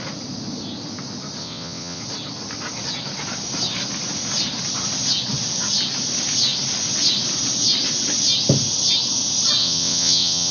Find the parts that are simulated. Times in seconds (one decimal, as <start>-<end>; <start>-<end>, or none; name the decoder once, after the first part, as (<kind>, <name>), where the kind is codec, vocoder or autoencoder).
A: 1.4-2.0 (vocoder, WaveNeXt); 9.6-10.5